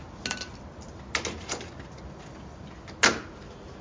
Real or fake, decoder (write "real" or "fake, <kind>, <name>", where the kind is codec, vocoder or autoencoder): real